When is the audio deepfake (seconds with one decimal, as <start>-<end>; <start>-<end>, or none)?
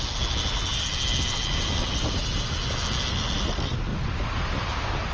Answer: none